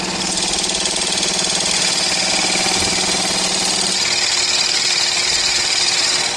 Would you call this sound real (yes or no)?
yes